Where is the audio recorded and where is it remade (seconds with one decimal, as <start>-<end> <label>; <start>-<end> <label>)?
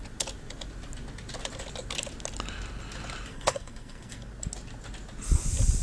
0.0-3.3 recorded; 3.3-4.3 remade; 4.3-5.8 recorded